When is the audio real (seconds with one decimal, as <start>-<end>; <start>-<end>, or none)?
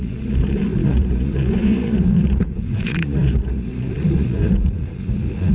none